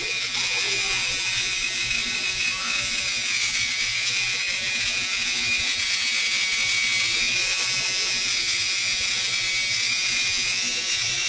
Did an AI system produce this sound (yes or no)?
yes